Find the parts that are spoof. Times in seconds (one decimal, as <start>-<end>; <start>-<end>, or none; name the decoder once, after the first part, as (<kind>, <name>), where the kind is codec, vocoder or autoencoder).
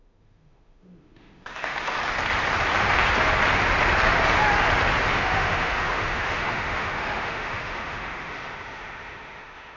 0.0-2.0 (autoencoder, DAC-VAE); 5.1-9.8